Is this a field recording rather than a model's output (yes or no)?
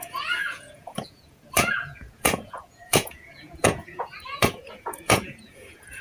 no